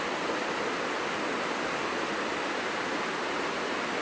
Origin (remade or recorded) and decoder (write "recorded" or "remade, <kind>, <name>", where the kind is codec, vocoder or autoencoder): recorded